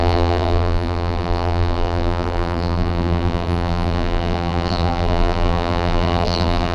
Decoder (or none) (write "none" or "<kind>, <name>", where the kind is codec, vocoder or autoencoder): vocoder, BigVGAN v2